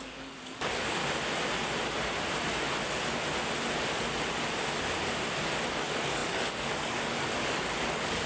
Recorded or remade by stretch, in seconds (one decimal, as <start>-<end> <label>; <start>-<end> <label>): 0.0-1.0 remade; 1.0-5.7 recorded; 5.7-8.3 remade